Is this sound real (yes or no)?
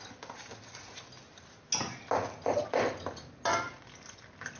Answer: yes